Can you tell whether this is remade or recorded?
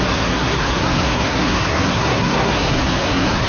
remade